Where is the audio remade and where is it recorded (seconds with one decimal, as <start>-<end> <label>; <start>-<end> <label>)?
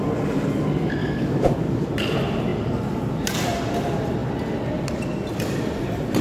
0.0-1.0 recorded; 1.0-1.9 remade; 1.9-6.2 recorded